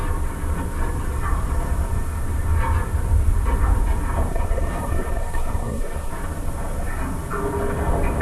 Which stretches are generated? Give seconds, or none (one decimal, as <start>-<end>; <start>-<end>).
4.3-6.1